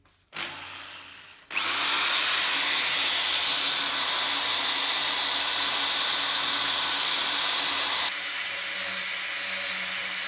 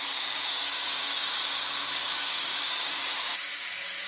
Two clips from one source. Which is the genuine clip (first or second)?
first